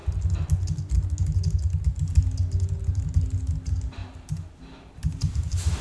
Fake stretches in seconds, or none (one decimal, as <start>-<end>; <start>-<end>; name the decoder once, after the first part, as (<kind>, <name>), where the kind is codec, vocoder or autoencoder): 4.0-5.8 (vocoder, BigVGAN v2)